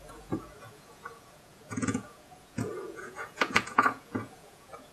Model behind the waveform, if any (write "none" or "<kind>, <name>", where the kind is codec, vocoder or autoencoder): vocoder, Vocos